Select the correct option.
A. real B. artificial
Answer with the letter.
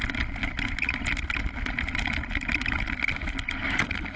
A